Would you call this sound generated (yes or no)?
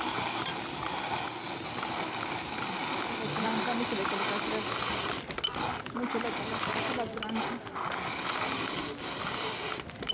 no